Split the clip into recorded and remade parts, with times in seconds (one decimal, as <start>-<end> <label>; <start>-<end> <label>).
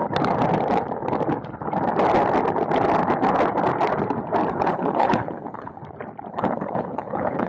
0.0-4.5 recorded; 4.5-5.8 remade; 5.8-6.3 recorded; 6.3-7.5 remade